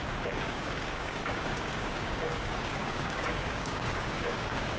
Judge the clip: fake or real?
fake